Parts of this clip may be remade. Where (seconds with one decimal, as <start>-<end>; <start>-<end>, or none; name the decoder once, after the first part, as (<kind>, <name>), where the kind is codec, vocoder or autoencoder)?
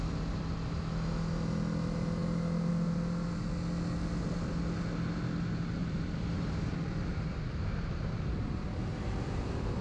5.8-9.8 (vocoder, BigVGAN v2)